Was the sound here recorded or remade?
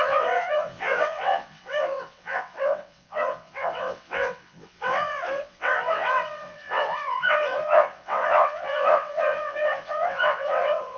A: remade